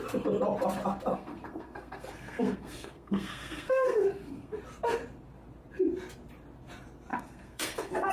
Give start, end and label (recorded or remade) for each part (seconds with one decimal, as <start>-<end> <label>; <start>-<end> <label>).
0.0-1.1 recorded; 1.1-4.6 remade; 4.6-7.1 recorded; 7.1-8.1 remade